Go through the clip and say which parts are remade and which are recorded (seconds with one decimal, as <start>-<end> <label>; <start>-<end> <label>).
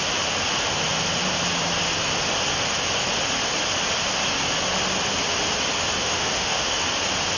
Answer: 0.0-6.0 recorded; 6.0-6.8 remade; 6.8-7.4 recorded